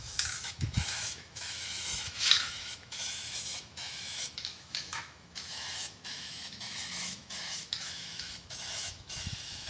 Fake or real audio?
fake